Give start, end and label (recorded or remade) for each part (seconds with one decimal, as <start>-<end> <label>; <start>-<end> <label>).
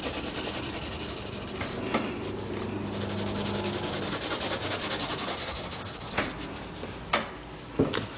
0.0-5.3 recorded; 5.3-6.1 remade; 6.1-8.2 recorded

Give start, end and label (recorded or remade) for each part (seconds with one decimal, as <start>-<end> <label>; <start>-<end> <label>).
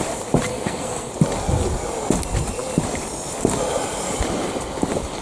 0.0-0.5 recorded; 0.5-1.1 remade; 1.1-5.2 recorded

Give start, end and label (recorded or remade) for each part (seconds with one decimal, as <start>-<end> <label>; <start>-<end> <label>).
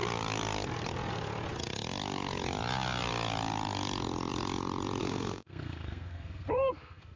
0.0-5.0 recorded; 5.0-7.2 remade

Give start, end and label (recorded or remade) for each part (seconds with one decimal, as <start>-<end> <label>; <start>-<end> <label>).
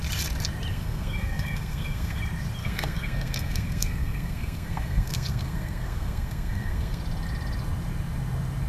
0.0-0.7 recorded; 0.7-2.2 remade; 2.2-2.6 recorded; 2.6-7.0 remade; 7.0-8.7 recorded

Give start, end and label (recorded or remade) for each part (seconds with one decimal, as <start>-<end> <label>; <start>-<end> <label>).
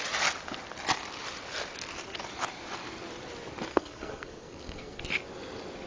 0.0-3.7 recorded; 3.7-5.0 remade; 5.0-5.9 recorded